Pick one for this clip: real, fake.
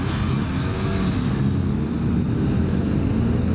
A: real